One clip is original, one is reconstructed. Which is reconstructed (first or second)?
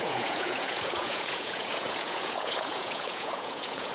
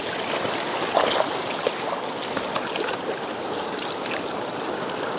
first